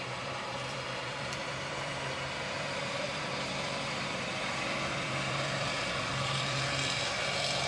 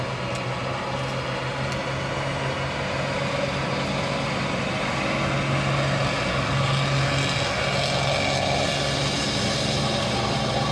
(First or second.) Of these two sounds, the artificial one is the first